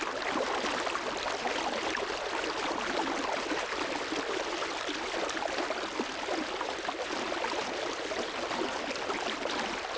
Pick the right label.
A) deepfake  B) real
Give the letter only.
B